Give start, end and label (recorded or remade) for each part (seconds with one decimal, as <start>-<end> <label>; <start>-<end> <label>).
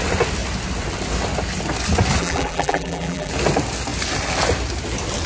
0.0-2.2 recorded; 2.2-3.3 remade; 3.3-5.3 recorded